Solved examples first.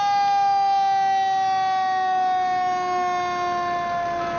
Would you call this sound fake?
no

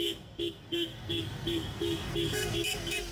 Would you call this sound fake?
yes